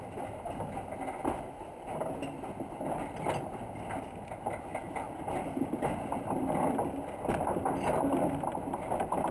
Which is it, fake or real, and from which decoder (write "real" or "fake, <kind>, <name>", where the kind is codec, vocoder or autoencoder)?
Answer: real